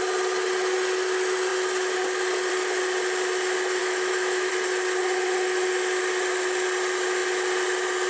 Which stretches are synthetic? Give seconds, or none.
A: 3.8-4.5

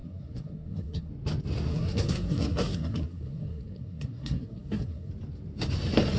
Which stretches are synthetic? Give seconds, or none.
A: 0.0-1.1; 1.7-5.1

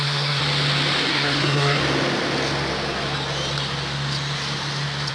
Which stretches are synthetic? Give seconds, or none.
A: 0.0-0.4; 1.1-1.8

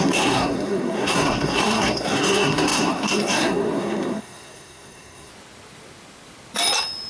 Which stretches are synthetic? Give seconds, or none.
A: 0.0-5.3

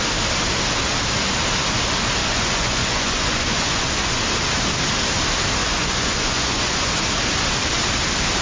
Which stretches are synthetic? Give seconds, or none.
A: 2.2-4.2; 5.6-6.9